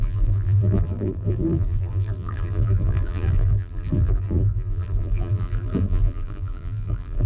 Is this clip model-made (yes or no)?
yes